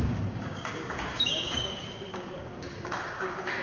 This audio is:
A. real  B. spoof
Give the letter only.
B